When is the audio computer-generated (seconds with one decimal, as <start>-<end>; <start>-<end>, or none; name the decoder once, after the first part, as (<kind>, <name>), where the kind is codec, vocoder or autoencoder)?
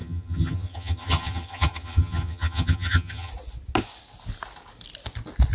0.0-3.3 (vocoder, HiFi-GAN)